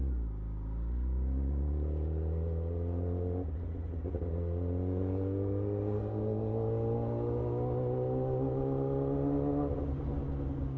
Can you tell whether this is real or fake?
real